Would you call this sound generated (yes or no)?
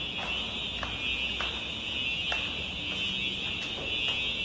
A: no